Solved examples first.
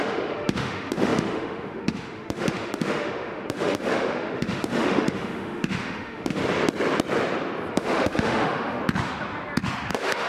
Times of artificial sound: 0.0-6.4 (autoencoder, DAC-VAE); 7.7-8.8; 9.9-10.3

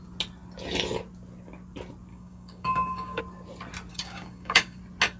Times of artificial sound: 2.1-3.2 (codec, DAC); 3.9-4.8

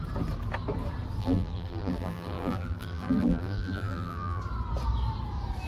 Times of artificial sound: 1.2-4.4 (vocoder, BigVGAN v2)

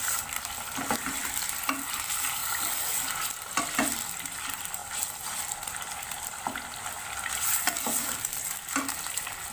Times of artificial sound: 2.4-3.6 (vocoder, BigVGAN v2)

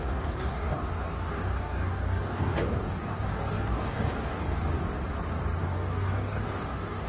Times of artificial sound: 0.0-4.7 (codec, DAC); 5.6-7.1

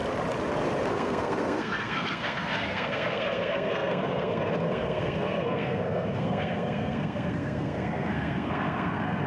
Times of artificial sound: 0.9-9.3 (codec, SNAC)

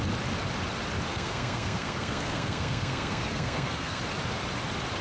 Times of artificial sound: 1.1-4.0 (codec, SNAC)

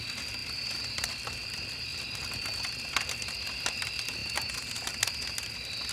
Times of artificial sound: none